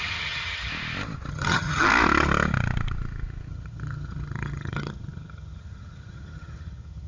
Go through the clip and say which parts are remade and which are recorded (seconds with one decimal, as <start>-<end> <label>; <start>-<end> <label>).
0.0-0.7 remade; 0.7-1.3 recorded; 1.3-1.9 remade; 1.9-3.5 recorded; 3.5-7.1 remade

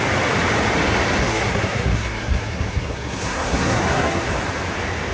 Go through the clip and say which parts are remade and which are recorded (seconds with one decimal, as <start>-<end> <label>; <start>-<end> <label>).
0.0-1.2 recorded; 1.2-4.3 remade; 4.3-5.1 recorded

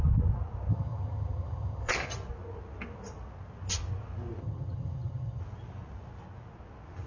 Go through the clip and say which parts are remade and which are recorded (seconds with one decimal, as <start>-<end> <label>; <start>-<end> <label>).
0.0-0.7 recorded; 0.7-1.9 remade; 1.9-4.4 recorded; 4.4-5.4 remade; 5.4-7.1 recorded

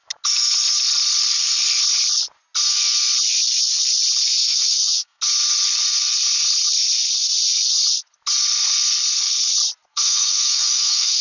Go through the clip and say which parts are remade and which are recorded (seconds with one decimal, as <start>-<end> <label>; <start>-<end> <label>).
0.0-4.4 recorded; 4.4-5.2 remade; 5.2-9.9 recorded; 9.9-11.2 remade

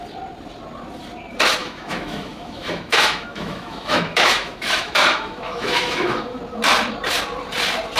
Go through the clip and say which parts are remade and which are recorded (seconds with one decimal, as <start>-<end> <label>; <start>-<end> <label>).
0.0-1.6 recorded; 1.6-6.4 remade; 6.4-8.0 recorded